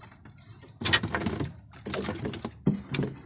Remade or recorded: recorded